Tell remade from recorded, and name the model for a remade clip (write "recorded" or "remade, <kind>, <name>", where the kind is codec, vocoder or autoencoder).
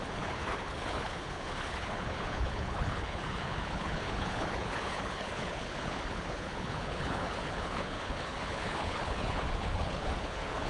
remade, codec, HILCodec